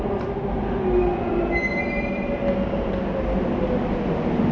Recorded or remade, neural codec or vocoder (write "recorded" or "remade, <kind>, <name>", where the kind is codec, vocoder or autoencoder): recorded